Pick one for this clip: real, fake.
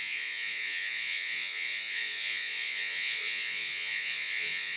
fake